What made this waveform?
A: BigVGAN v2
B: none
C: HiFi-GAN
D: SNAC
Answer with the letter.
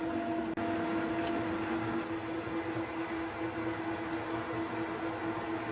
B